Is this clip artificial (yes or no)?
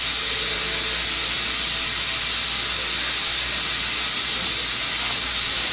no